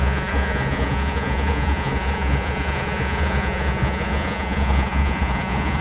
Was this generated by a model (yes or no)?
yes